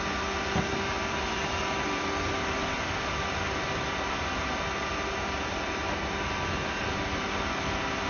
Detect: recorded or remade recorded